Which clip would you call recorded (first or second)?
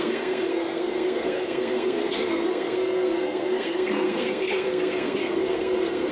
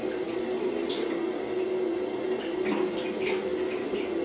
second